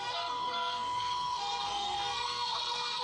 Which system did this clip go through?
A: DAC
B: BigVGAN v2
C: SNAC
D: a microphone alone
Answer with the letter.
C